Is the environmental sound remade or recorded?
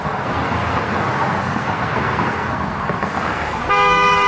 remade